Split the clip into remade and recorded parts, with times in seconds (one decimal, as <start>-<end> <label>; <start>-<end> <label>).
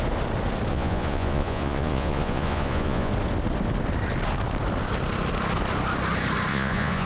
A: 0.0-0.7 recorded; 0.7-3.1 remade; 3.1-6.5 recorded; 6.5-7.1 remade